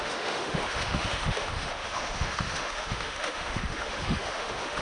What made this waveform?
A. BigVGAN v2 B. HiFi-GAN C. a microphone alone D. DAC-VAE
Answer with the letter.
D